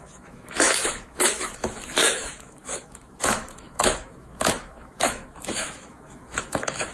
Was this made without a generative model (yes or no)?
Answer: no